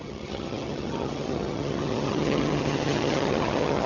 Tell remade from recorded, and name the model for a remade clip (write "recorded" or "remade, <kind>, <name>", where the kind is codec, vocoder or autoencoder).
remade, vocoder, HiFi-GAN